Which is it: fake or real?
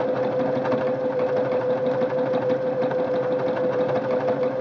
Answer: real